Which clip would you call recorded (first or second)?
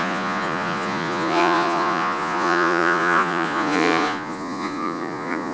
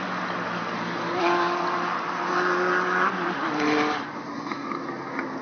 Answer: second